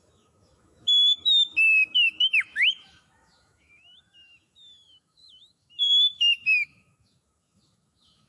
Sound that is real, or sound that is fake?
fake